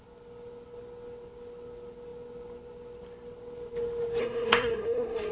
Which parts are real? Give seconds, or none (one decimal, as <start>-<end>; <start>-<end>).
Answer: 0.0-4.2